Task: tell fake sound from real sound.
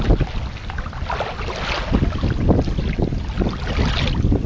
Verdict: real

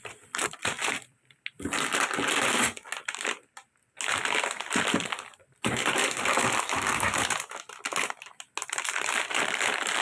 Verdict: real